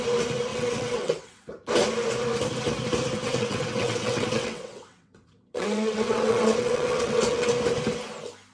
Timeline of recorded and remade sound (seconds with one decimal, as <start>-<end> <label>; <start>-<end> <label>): 0.0-0.5 recorded; 0.5-1.5 remade; 1.5-3.3 recorded; 3.3-7.5 remade; 7.5-8.5 recorded